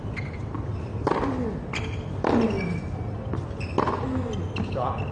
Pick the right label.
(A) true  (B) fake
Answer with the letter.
A